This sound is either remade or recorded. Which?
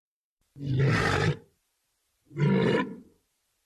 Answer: recorded